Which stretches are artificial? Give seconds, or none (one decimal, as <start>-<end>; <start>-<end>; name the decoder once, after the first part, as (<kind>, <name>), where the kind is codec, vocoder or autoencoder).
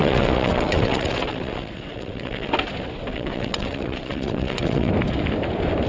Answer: 0.0-2.5 (vocoder, WaveNeXt); 3.1-4.9